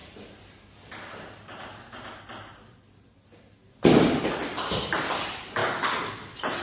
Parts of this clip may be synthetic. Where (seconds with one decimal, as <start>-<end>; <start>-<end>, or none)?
0.0-2.2